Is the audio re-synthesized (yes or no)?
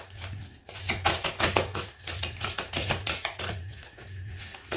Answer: yes